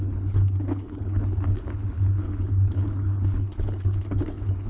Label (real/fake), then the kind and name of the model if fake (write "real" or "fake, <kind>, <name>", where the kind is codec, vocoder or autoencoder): fake, codec, HILCodec